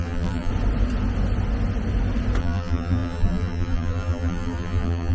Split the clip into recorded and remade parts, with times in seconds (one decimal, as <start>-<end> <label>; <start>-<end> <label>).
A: 0.0-0.5 remade; 0.5-2.4 recorded; 2.4-5.1 remade